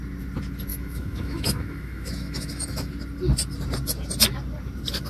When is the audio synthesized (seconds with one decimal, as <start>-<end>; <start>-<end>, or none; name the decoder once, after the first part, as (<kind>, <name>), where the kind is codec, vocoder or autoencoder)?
0.7-2.9 (autoencoder, DAC-VAE)